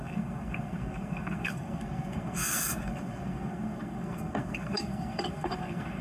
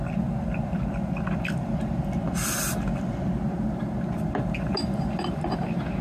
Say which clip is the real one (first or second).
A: second